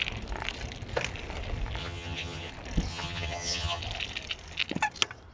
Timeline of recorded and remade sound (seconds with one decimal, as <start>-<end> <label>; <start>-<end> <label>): 0.0-1.8 recorded; 1.8-2.5 remade; 2.5-2.9 recorded; 2.9-3.8 remade; 3.8-5.3 recorded